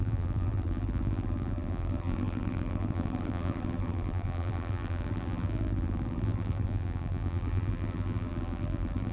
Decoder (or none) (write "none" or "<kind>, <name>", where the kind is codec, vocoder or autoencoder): vocoder, BigVGAN v2